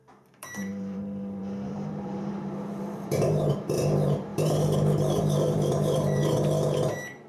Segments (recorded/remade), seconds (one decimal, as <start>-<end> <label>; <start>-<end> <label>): 0.0-6.2 remade; 6.2-7.3 recorded